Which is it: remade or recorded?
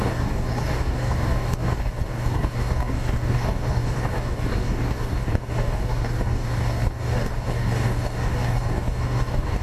remade